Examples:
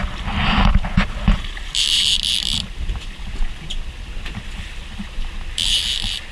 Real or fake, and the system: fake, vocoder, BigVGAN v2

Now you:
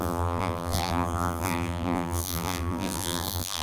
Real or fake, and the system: fake, vocoder, BigVGAN v2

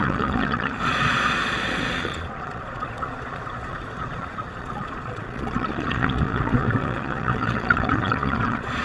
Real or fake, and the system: fake, vocoder, Vocos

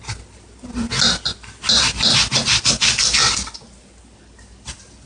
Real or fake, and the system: real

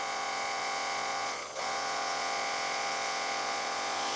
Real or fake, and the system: fake, vocoder, Vocos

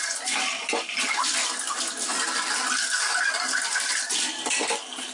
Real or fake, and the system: real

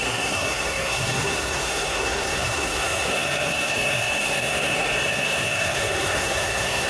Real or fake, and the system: fake, codec, SNAC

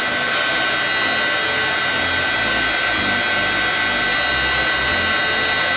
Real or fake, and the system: real